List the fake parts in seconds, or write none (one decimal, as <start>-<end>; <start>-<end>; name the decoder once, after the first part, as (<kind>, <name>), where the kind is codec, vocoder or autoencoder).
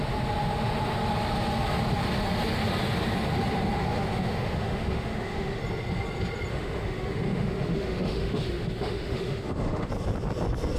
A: 3.8-5.6 (autoencoder, DAC-VAE); 6.5-9.9